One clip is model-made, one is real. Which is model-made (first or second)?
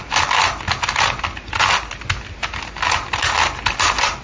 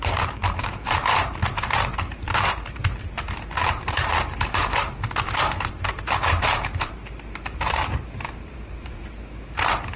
second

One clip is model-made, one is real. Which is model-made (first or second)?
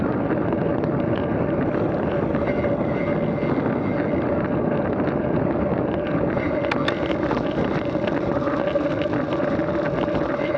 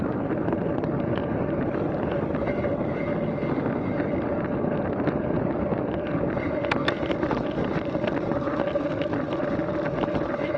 second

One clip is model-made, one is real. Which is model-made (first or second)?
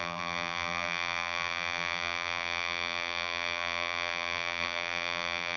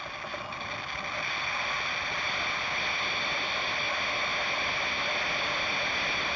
first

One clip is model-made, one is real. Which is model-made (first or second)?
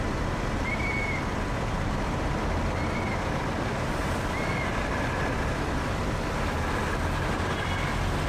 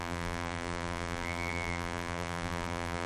second